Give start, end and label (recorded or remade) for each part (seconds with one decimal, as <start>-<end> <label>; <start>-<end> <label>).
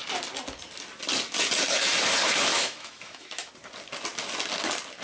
0.0-2.5 recorded; 2.5-3.5 remade; 3.5-5.0 recorded